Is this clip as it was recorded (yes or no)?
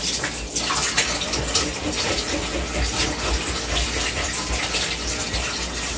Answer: yes